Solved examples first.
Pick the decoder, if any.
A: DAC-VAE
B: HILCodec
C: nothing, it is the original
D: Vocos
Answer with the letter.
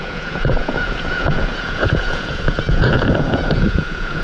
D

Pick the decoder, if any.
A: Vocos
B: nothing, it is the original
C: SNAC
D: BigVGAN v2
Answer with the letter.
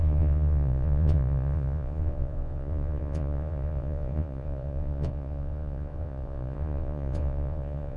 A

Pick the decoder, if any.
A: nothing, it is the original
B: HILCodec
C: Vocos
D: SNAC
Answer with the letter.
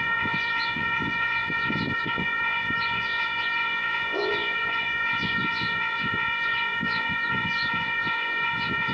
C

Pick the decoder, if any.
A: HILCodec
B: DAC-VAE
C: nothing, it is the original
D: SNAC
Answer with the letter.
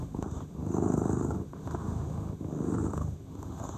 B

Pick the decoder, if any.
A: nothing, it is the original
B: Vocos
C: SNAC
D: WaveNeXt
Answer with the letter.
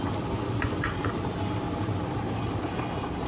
A